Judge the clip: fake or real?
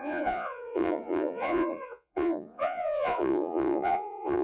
fake